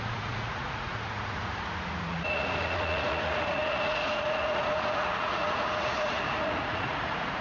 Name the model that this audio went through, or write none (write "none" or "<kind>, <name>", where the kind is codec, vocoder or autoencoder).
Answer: vocoder, Vocos